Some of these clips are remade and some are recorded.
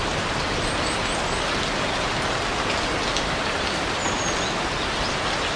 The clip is recorded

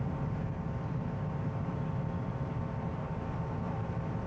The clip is recorded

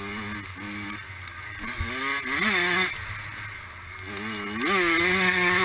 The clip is recorded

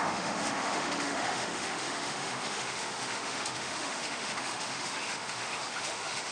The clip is remade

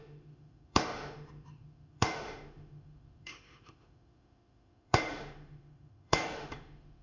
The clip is remade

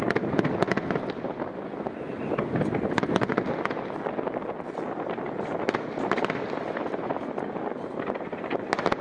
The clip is recorded